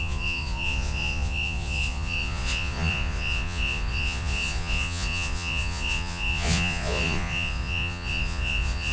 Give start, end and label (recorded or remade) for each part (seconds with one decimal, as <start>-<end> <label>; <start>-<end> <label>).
0.0-8.9 remade

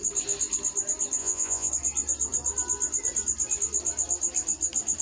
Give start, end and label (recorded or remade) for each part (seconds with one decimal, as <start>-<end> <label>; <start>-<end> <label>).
0.0-1.2 recorded; 1.2-1.7 remade; 1.7-5.0 recorded

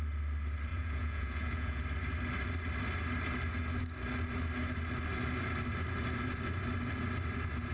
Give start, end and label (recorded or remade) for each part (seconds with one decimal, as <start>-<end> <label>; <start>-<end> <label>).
0.0-0.7 recorded; 0.7-1.8 remade; 1.8-7.7 recorded

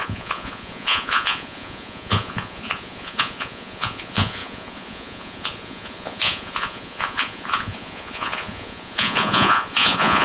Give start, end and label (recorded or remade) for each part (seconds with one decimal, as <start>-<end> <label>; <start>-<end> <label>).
0.0-10.2 remade

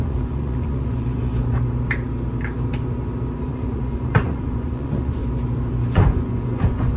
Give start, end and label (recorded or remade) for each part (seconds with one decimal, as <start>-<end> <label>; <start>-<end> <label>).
0.0-1.3 remade; 1.3-3.4 recorded; 3.4-5.2 remade; 5.2-5.9 recorded; 5.9-7.0 remade

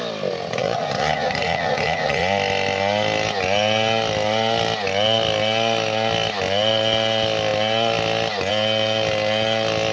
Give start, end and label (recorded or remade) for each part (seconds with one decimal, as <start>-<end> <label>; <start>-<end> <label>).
0.0-0.6 recorded; 0.6-2.2 remade; 2.2-9.9 recorded

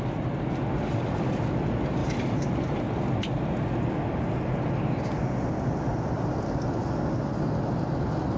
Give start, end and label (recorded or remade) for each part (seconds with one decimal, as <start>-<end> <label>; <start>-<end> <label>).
0.0-8.4 recorded

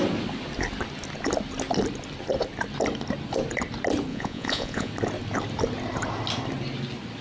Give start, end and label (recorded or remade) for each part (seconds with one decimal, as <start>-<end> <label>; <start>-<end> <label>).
0.0-4.1 recorded; 4.1-4.9 remade; 4.9-7.2 recorded